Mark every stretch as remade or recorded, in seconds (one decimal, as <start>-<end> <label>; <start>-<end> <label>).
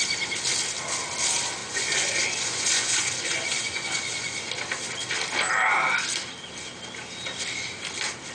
0.0-1.6 recorded; 1.6-4.5 remade; 4.5-8.3 recorded